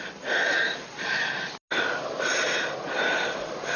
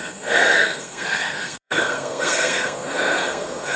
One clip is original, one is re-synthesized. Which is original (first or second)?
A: first